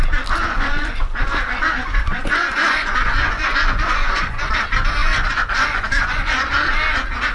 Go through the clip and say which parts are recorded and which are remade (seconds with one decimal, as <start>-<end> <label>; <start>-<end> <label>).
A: 0.0-0.4 recorded; 0.4-1.0 remade; 1.0-1.8 recorded; 1.8-4.5 remade; 4.5-5.0 recorded; 5.0-6.5 remade; 6.5-7.3 recorded